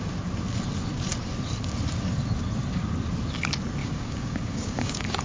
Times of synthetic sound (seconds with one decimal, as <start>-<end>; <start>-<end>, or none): 3.8-5.2